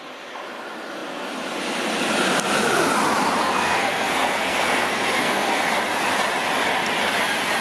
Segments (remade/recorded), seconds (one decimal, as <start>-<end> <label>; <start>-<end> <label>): 0.0-3.4 recorded; 3.4-5.6 remade; 5.6-7.6 recorded